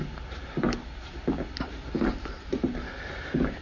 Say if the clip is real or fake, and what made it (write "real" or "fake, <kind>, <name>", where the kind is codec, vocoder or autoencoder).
real